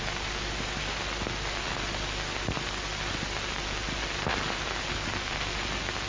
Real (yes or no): yes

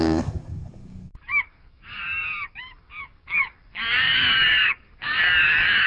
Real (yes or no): no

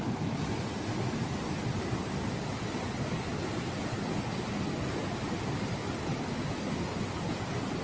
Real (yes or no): yes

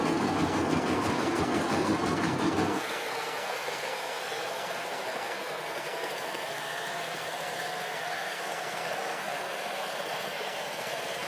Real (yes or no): no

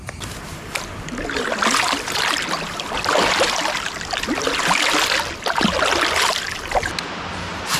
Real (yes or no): yes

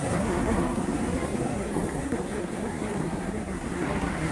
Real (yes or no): no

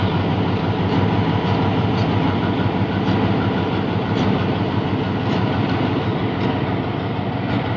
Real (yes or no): yes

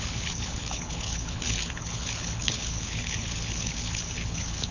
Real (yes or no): no